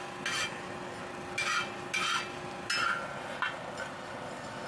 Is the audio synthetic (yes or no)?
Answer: no